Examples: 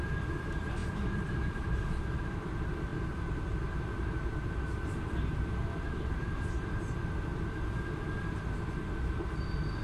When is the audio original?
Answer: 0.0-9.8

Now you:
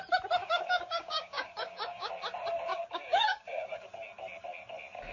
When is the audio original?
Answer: 0.0-0.4; 2.1-2.7; 3.7-5.1

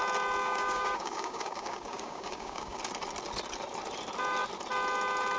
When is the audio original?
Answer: 0.0-0.4; 2.8-5.4

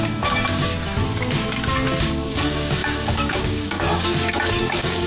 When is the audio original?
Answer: 0.7-2.0

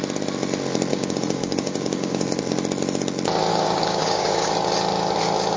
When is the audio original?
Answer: 0.0-0.9; 2.4-3.5; 4.5-5.6

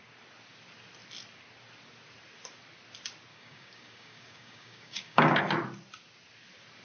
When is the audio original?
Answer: 0.0-3.3; 5.4-6.8

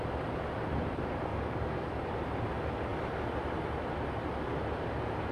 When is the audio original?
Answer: 0.0-1.3; 2.0-5.3